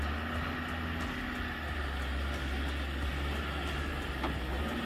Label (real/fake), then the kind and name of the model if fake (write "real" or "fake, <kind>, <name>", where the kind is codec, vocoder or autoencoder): real